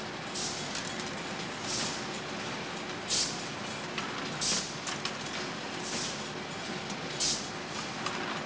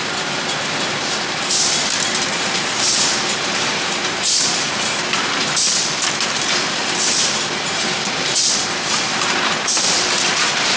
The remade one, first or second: second